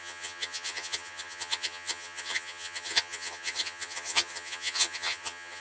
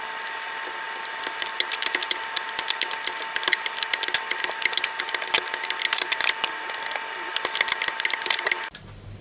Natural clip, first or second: second